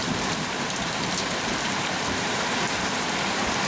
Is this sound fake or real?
fake